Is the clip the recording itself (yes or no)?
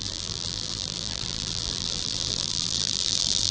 no